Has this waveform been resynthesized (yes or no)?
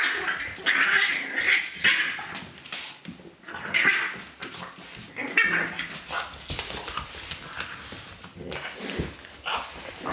no